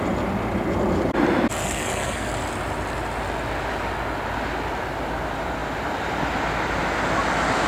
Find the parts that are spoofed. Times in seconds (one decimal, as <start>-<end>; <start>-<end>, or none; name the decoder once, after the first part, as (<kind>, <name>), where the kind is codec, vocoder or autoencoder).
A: 1.6-2.3 (codec, SNAC)